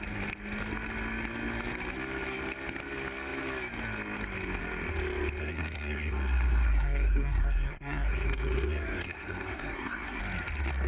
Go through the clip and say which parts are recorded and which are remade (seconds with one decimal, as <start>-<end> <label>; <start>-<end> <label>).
0.0-5.4 recorded; 5.4-10.2 remade; 10.2-10.9 recorded